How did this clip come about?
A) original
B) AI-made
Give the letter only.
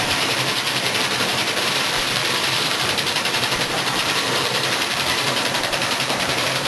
B